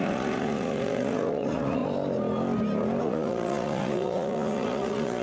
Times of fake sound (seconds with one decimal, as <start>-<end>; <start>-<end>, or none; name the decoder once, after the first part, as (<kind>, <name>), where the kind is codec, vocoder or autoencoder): 0.0-1.8 (vocoder, Vocos); 3.0-5.2